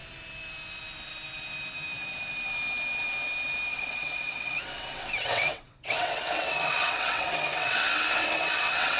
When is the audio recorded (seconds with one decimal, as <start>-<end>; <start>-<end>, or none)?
0.0-3.7